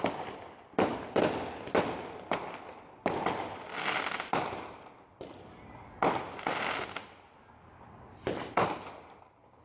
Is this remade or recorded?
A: recorded